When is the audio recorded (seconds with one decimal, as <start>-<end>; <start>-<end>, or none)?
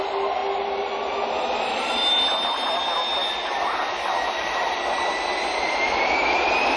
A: 0.0-6.8